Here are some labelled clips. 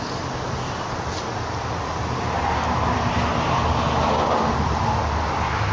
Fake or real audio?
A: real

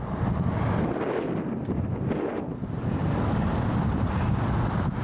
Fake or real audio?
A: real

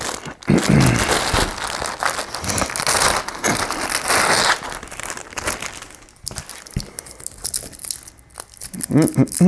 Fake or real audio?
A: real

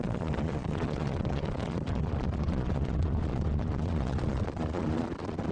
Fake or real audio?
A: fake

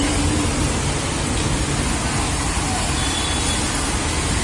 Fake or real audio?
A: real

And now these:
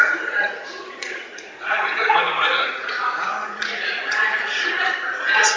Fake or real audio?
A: fake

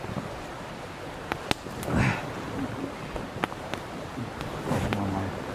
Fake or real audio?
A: real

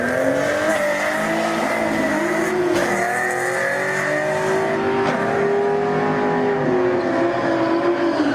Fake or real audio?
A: real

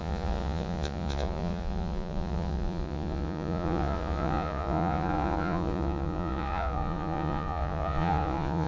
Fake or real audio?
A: fake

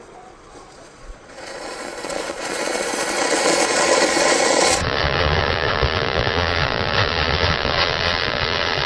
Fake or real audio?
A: fake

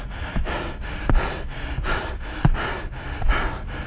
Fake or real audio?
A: real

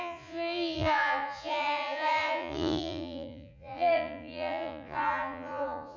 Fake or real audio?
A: fake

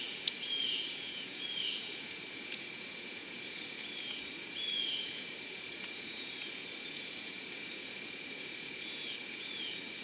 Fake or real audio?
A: fake